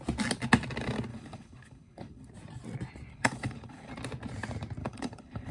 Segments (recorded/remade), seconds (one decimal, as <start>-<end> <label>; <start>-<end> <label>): 0.0-1.1 recorded; 1.1-2.3 remade; 2.3-3.1 recorded; 3.1-3.9 remade; 3.9-4.8 recorded; 4.8-5.5 remade